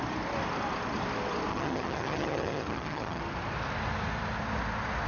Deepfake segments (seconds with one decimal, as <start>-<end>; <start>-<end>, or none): 1.5-3.2